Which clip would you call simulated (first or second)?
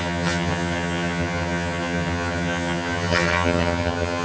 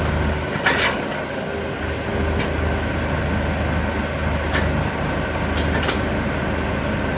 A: first